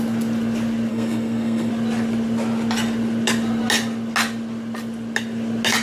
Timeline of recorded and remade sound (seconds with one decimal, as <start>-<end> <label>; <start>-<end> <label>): 0.0-0.9 recorded; 0.9-1.7 remade; 1.7-5.8 recorded